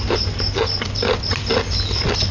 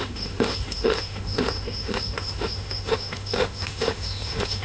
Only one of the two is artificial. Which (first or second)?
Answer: second